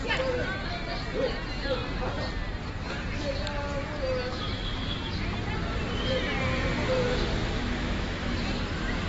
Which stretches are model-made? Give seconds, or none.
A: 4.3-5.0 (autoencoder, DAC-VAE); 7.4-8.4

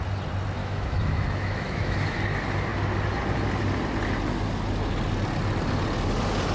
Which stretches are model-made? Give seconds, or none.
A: 0.6-2.2 (autoencoder, DAC-VAE)

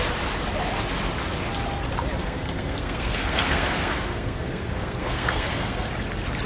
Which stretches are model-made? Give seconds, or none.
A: 2.2-5.9 (codec, SNAC)

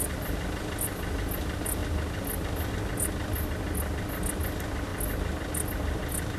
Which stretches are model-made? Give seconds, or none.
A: none

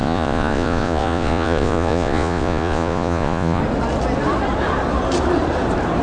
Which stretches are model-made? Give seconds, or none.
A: 0.0-3.6 (vocoder, Vocos)

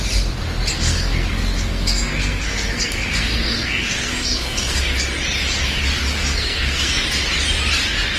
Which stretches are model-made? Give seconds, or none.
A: 0.7-4.8 (codec, SNAC); 6.2-7.0

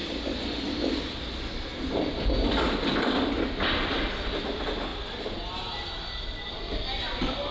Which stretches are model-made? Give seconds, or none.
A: 0.0-1.0 (vocoder, BigVGAN v2); 4.9-6.4

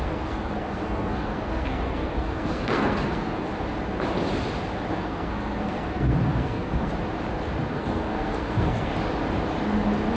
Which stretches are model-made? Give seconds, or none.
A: 0.0-3.5 (codec, SNAC); 4.9-6.9; 7.7-8.9